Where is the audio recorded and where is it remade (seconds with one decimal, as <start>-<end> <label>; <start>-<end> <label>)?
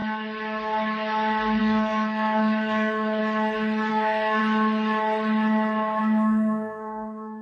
0.0-1.6 recorded; 1.6-3.2 remade; 3.2-3.9 recorded; 3.9-4.4 remade; 4.4-6.0 recorded; 6.0-7.4 remade